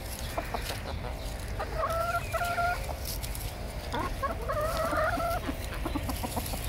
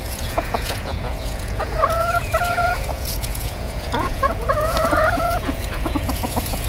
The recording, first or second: first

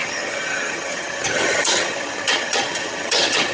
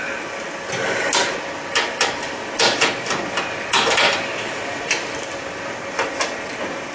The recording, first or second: second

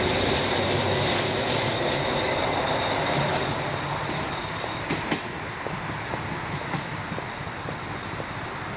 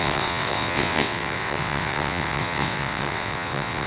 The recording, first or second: first